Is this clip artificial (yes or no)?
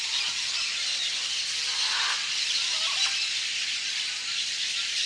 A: no